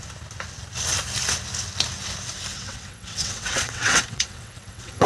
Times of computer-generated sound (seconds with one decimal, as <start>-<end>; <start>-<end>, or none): 2.5-5.1